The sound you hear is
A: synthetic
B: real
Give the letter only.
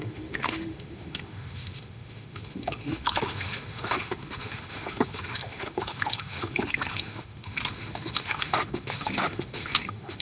A